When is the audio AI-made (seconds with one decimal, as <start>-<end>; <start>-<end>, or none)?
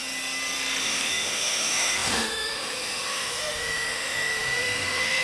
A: 0.8-5.2